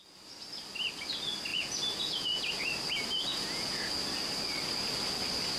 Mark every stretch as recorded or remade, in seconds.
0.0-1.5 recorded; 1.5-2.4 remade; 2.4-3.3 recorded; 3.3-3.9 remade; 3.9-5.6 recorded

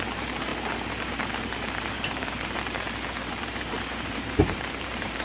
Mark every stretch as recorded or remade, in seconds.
0.0-5.2 remade

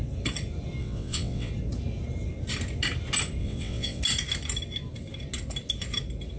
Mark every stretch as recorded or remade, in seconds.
0.0-0.8 recorded; 0.8-1.5 remade; 1.5-3.4 recorded; 3.4-4.0 remade; 4.0-6.4 recorded

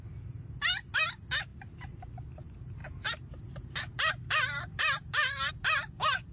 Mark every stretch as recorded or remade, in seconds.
0.0-2.8 recorded; 2.8-5.5 remade; 5.5-6.3 recorded